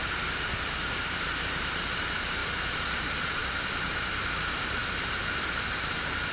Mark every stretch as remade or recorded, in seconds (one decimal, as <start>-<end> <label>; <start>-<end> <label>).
0.0-3.4 remade; 3.4-4.3 recorded; 4.3-6.3 remade